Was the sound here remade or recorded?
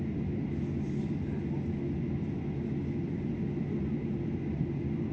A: recorded